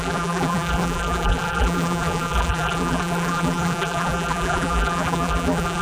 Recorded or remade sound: remade